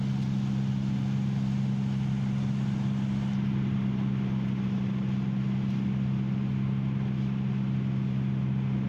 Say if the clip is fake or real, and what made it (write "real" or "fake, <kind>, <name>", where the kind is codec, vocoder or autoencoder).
real